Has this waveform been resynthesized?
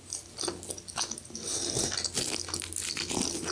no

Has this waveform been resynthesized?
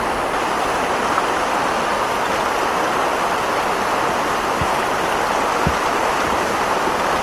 no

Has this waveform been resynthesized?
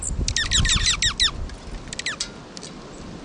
no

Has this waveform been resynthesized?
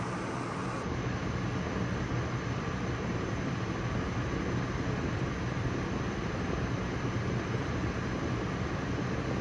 no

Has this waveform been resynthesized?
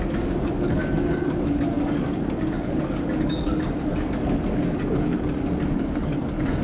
yes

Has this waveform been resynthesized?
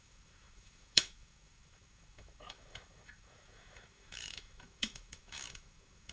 yes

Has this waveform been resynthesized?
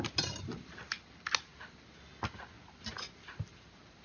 no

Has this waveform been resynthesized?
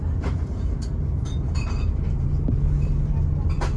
no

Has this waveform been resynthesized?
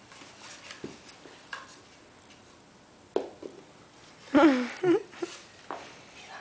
no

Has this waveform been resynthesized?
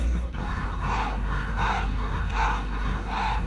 yes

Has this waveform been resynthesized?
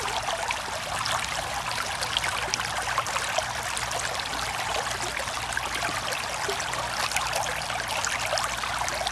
no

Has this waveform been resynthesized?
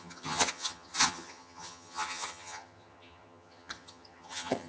yes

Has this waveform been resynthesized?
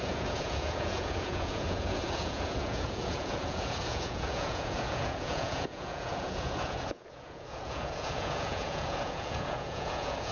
yes